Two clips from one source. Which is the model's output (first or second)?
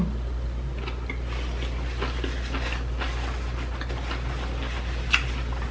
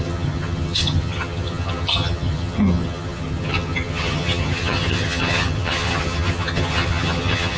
second